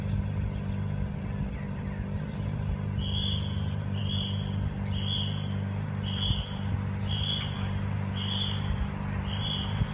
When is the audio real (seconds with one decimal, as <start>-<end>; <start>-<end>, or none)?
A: 0.0-9.9